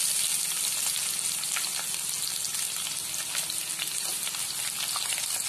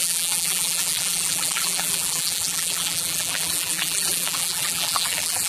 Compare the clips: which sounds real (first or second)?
first